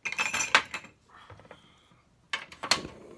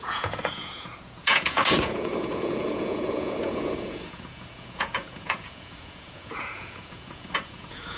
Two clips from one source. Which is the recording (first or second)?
first